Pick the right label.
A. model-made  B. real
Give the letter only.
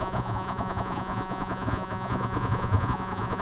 A